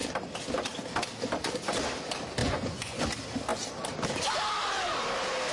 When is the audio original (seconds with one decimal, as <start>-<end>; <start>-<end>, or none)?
0.0-2.4; 3.0-5.5